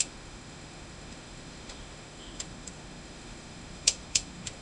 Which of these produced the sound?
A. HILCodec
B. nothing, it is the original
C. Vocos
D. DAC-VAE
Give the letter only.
D